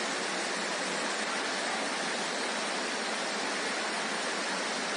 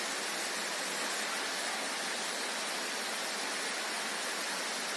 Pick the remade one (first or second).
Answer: first